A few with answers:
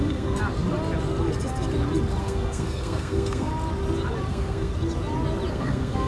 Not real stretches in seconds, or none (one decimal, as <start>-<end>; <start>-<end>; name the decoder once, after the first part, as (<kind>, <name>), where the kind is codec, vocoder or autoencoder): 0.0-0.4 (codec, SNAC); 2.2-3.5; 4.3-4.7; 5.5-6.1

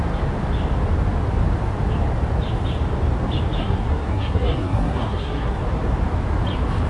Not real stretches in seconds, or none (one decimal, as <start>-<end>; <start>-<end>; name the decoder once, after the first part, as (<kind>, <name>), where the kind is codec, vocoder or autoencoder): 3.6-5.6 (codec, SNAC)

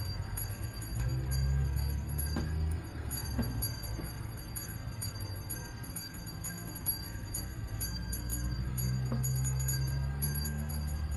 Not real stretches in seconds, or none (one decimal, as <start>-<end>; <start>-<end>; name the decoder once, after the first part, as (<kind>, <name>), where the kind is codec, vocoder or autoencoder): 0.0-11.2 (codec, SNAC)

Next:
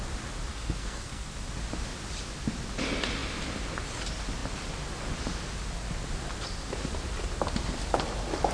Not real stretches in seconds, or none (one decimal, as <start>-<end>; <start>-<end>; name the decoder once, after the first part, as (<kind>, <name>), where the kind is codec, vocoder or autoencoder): 0.5-1.3 (codec, SNAC)

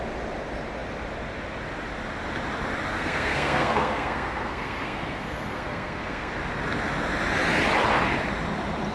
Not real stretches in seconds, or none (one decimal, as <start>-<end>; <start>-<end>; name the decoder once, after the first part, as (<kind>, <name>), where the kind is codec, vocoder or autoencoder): 2.9-6.3 (codec, SNAC)